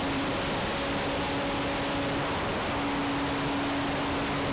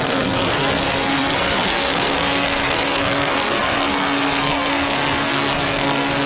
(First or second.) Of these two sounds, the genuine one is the first